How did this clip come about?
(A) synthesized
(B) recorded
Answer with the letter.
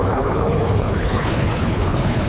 A